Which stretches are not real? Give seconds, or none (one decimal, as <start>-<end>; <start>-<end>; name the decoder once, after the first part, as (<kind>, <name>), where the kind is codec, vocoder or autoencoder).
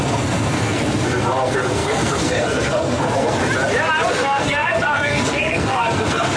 0.0-3.4 (codec, SNAC); 4.1-6.4